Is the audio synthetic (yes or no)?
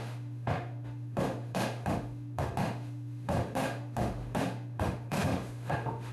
yes